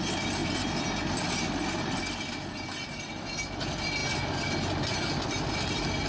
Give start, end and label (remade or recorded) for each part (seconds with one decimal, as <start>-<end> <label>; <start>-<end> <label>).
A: 0.0-4.0 remade; 4.0-5.1 recorded; 5.1-6.1 remade